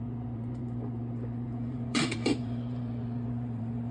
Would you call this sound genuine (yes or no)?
no